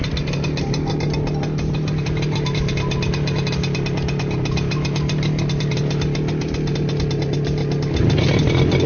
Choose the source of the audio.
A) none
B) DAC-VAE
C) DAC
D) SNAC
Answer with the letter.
A